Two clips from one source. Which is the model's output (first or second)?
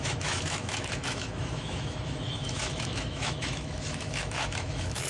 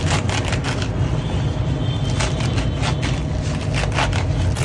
first